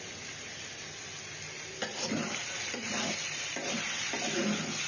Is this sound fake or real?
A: fake